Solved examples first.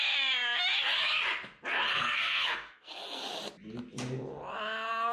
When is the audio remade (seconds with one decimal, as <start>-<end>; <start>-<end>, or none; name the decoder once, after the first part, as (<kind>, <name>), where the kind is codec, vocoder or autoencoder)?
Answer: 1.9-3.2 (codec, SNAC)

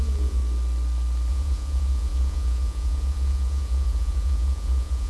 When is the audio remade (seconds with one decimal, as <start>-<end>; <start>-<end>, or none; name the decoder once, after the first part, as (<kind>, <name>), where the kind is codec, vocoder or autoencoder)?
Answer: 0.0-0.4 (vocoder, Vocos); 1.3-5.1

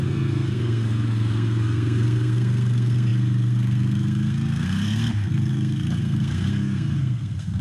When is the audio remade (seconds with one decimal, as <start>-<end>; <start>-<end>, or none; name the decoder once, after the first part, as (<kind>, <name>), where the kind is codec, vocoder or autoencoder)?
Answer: 0.0-7.6 (codec, SNAC)

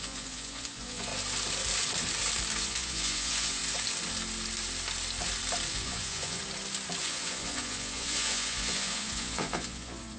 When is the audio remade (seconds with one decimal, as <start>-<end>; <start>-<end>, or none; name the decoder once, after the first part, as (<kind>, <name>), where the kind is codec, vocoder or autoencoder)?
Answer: 0.0-1.1 (vocoder, Vocos); 2.6-3.6; 5.7-6.4; 7.0-10.2

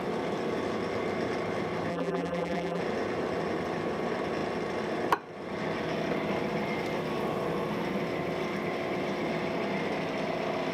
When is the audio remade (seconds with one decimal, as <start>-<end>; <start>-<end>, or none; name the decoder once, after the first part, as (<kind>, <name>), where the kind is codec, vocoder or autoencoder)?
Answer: 1.9-2.8 (vocoder, BigVGAN v2)

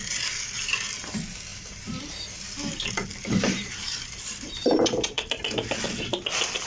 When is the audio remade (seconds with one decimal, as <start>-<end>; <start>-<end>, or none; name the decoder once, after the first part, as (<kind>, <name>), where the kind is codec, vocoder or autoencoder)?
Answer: 1.5-2.1 (vocoder, BigVGAN v2); 3.1-5.4